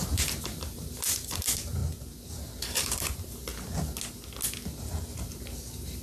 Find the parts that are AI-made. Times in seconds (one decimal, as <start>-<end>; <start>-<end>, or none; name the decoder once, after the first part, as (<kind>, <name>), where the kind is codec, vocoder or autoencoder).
0.0-1.8 (vocoder, BigVGAN v2); 2.7-3.5; 5.4-6.0